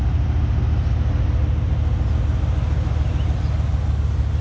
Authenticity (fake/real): real